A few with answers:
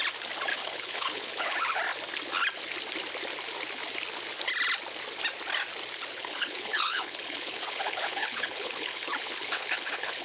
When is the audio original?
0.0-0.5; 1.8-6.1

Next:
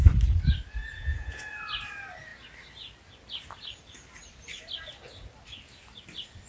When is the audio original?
0.0-0.8; 1.4-6.5

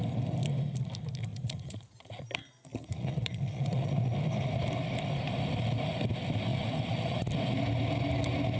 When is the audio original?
0.0-1.3; 2.1-2.7; 4.0-6.5; 7.3-8.6